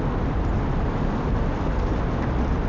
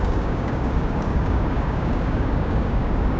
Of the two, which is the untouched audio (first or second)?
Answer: first